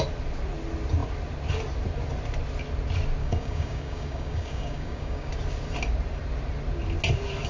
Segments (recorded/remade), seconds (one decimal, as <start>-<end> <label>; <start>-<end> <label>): 0.0-3.2 recorded; 3.2-5.3 remade; 5.3-7.5 recorded